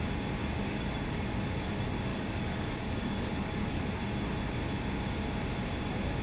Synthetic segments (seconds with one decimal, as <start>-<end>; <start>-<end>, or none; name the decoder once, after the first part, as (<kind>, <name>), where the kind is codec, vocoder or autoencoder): 0.4-1.7 (codec, DAC); 2.1-3.9